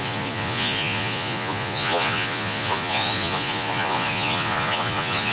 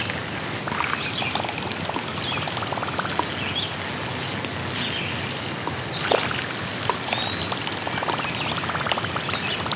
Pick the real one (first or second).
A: second